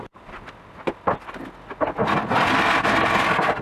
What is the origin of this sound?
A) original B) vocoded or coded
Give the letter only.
A